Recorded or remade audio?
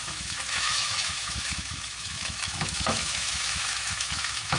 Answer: remade